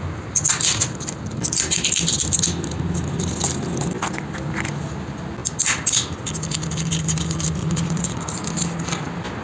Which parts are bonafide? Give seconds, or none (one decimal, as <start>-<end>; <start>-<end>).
0.0-7.6; 8.2-9.4